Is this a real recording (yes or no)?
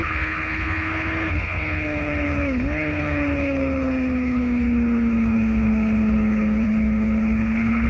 no